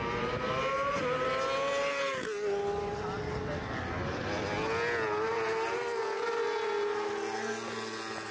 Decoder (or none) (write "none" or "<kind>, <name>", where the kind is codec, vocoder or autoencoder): none